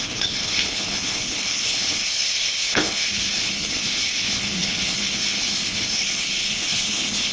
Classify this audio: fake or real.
fake